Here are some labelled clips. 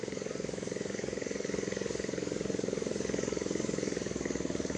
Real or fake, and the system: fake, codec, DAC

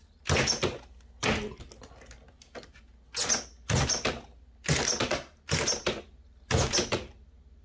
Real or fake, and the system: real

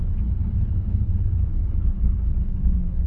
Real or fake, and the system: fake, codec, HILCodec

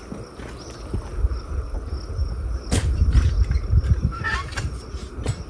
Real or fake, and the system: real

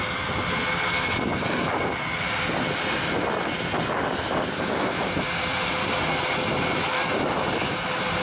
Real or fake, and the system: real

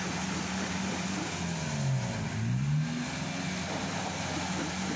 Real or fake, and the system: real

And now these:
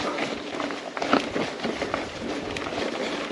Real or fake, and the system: real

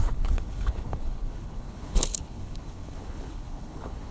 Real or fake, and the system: fake, codec, HILCodec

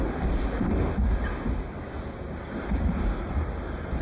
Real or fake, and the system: real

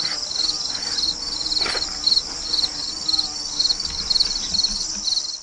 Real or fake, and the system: real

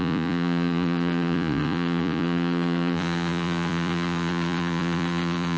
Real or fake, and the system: fake, vocoder, Vocos